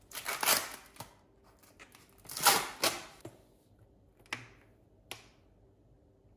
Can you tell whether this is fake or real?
real